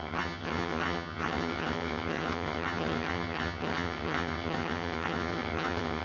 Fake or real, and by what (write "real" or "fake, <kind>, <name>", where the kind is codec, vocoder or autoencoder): fake, vocoder, HiFi-GAN